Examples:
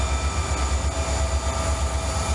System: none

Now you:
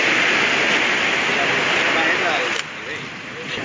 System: none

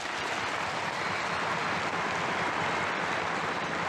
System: none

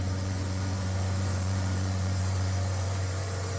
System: vocoder, Vocos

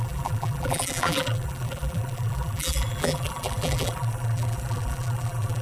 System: vocoder, BigVGAN v2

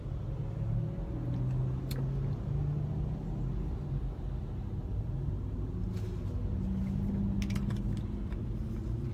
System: none